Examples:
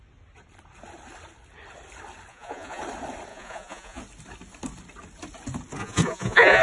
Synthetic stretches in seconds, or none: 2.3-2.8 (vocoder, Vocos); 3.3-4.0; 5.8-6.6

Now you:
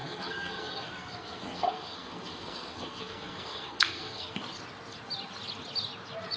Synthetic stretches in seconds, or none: 0.0-4.4 (codec, SNAC)

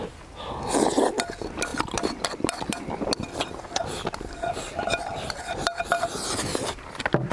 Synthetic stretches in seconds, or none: none